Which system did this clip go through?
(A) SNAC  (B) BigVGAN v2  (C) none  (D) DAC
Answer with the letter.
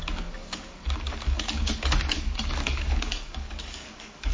D